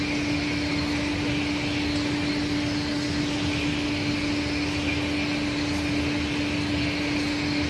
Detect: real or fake real